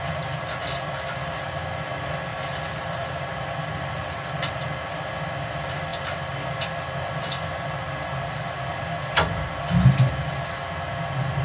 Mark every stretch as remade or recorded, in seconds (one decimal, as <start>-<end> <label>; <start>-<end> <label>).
0.0-2.3 recorded; 2.3-3.8 remade; 3.8-8.7 recorded; 8.7-9.5 remade; 9.5-11.4 recorded